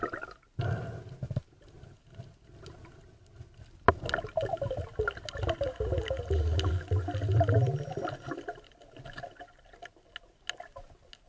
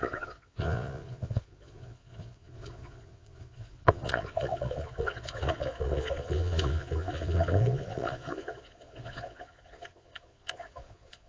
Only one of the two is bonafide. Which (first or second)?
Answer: first